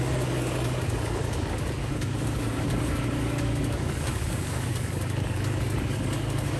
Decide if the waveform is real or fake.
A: fake